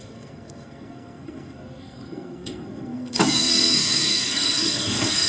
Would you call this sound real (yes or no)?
no